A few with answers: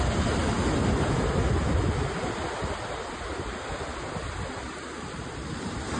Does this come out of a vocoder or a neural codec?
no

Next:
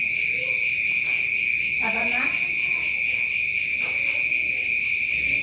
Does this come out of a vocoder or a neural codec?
no